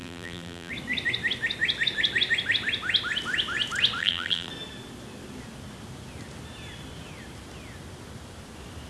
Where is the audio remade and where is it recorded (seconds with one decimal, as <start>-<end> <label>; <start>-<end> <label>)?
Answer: 0.0-0.7 remade; 0.7-4.0 recorded; 4.0-4.5 remade; 4.5-8.9 recorded